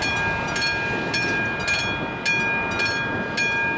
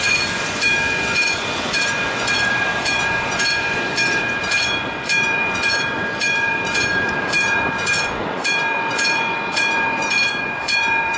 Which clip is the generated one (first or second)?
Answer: second